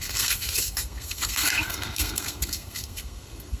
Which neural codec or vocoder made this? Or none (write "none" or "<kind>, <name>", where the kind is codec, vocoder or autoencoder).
codec, SNAC